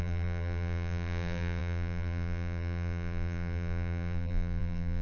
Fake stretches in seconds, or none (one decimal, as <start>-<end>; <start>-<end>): 0.0-5.0